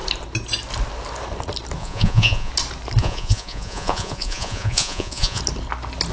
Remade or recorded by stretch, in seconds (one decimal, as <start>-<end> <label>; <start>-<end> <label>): 0.0-1.8 recorded; 1.8-2.5 remade; 2.5-3.0 recorded; 3.0-5.4 remade; 5.4-6.1 recorded